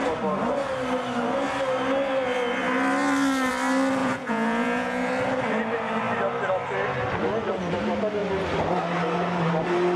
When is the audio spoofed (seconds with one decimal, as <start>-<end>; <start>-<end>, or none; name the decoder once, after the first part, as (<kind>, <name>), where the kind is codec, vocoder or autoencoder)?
4.0-5.1 (vocoder, Vocos)